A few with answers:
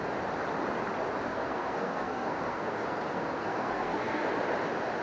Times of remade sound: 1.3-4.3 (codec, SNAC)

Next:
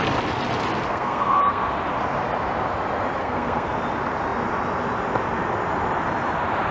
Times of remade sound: 0.9-1.6 (codec, SNAC); 3.2-3.7

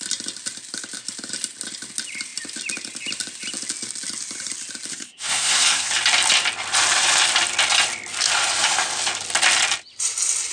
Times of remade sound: 4.9-5.9 (codec, SNAC)